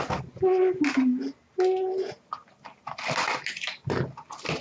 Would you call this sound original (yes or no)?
yes